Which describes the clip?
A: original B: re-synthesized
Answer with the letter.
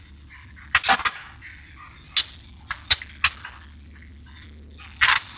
A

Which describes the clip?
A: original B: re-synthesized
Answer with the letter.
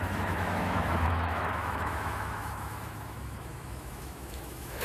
B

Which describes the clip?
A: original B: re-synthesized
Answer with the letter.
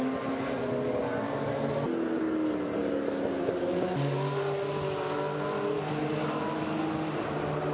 A